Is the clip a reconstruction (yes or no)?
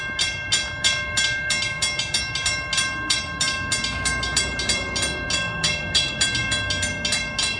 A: no